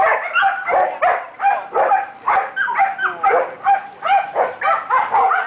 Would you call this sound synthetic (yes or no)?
no